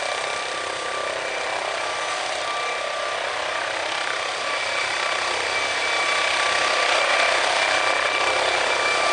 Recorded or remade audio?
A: recorded